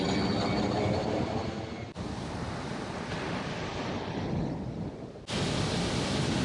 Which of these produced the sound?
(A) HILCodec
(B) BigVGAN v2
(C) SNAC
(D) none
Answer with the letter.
D